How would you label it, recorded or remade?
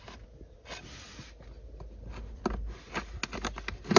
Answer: recorded